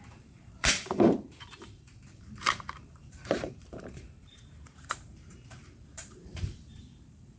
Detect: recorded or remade remade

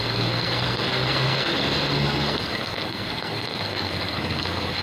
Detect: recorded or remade remade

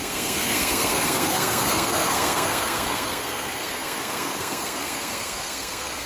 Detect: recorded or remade remade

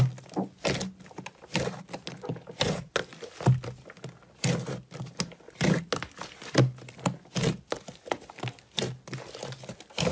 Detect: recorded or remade recorded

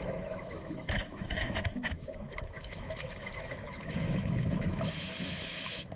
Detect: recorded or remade remade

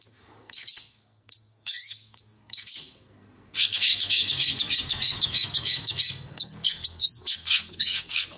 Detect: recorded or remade remade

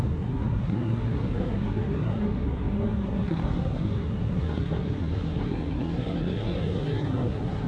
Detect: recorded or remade remade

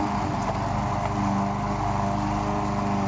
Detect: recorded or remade recorded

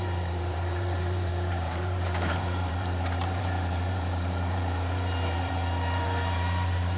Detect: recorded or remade remade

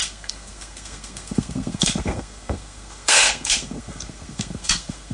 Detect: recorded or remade remade